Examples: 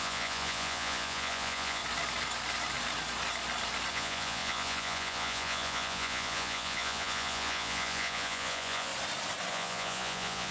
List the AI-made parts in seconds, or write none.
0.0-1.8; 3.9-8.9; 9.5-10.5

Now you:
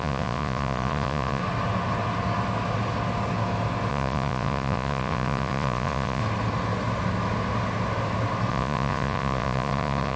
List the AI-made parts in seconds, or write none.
0.0-1.4; 3.9-6.2; 8.5-10.2

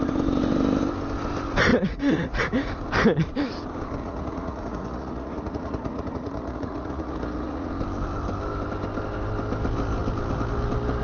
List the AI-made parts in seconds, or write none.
1.7-2.7; 4.0-7.7

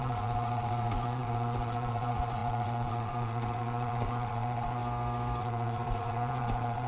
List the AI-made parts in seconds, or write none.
0.0-4.8; 5.4-6.9

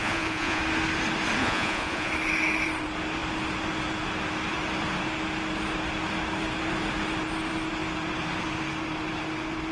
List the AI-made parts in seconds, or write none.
0.0-0.6; 1.4-2.1

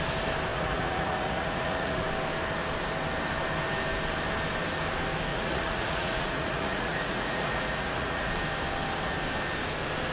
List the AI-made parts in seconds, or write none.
0.5-2.1; 5.3-8.3

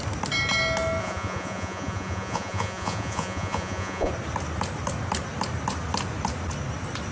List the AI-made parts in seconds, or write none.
1.0-4.1

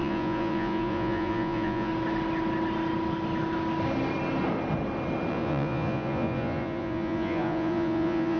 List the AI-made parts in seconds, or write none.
0.0-1.9; 5.3-8.4